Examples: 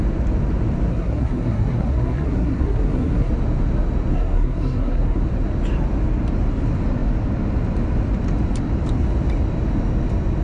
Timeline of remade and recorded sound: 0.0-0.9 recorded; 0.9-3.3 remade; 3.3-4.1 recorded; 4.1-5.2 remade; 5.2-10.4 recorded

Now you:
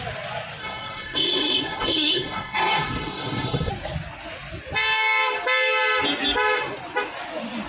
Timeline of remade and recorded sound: 0.0-0.6 recorded; 0.6-3.7 remade; 3.7-7.7 recorded

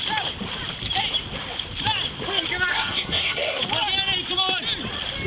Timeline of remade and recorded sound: 0.0-2.7 recorded; 2.7-3.6 remade; 3.6-5.3 recorded